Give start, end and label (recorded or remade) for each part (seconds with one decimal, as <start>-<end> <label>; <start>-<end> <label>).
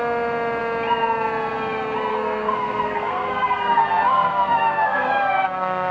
0.0-2.1 recorded; 2.1-5.9 remade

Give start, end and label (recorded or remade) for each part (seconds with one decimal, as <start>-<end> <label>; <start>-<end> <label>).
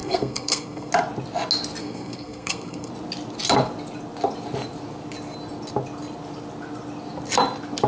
0.0-0.9 remade; 0.9-1.8 recorded; 1.8-2.9 remade; 2.9-7.9 recorded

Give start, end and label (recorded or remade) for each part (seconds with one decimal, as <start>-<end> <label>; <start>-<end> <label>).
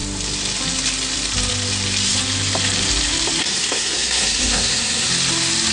0.0-3.4 recorded; 3.4-5.1 remade; 5.1-5.7 recorded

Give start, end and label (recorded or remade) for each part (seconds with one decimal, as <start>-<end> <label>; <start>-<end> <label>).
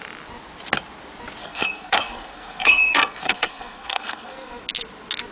0.0-1.4 recorded; 1.4-4.6 remade; 4.6-5.3 recorded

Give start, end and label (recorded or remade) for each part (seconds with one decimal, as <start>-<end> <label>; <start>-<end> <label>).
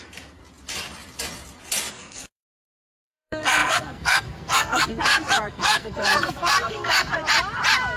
0.0-0.4 remade; 0.4-1.9 recorded; 1.9-7.1 remade; 7.1-8.0 recorded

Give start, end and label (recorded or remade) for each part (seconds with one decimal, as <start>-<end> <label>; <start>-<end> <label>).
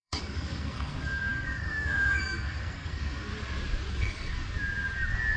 0.0-3.3 remade; 3.3-3.9 recorded; 3.9-4.3 remade; 4.3-5.4 recorded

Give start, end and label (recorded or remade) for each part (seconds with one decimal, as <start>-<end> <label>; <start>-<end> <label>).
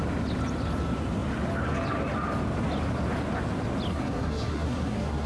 0.0-3.9 recorded; 3.9-5.3 remade